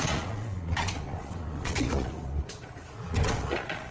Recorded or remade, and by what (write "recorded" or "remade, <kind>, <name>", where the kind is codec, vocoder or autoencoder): remade, vocoder, Vocos